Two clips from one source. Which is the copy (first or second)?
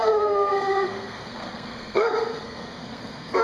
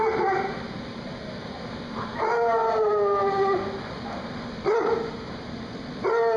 first